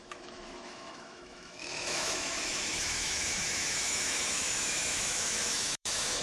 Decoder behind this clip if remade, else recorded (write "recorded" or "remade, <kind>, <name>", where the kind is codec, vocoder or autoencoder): remade, autoencoder, DAC-VAE